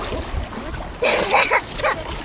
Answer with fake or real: real